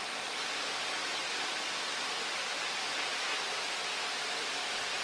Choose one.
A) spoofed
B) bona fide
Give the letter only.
B